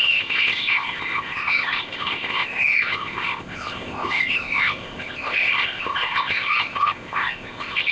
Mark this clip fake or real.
fake